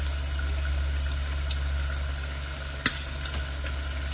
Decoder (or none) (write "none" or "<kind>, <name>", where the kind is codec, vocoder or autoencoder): none